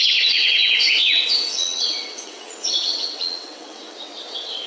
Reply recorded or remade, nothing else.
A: remade